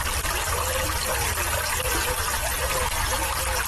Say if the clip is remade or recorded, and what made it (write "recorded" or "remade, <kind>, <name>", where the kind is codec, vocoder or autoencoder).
recorded